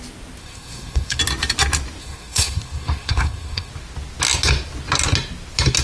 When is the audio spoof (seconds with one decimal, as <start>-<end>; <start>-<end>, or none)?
0.4-1.2; 2.0-3.7